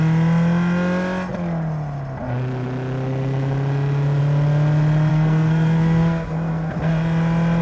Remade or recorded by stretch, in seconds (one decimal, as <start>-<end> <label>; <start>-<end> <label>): 0.0-5.1 recorded; 5.1-6.9 remade; 6.9-7.6 recorded